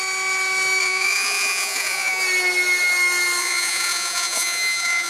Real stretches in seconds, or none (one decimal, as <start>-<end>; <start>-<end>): 0.0-0.8; 2.2-3.4

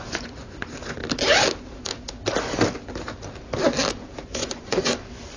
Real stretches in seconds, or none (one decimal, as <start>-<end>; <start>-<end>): 1.0-4.2

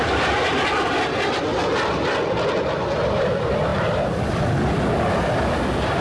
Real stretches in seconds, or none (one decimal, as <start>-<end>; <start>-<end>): 0.0-6.0

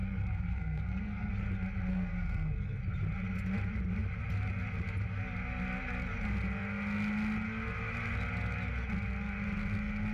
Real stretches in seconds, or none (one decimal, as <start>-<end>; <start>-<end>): 1.3-1.9; 2.8-10.1